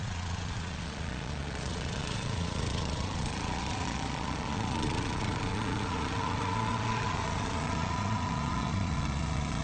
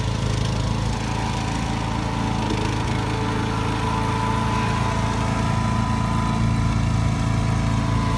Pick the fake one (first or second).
first